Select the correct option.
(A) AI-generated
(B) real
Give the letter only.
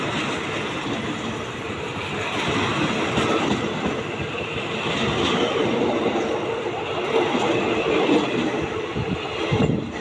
B